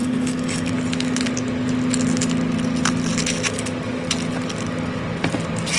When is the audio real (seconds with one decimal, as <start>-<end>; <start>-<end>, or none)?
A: 0.7-5.8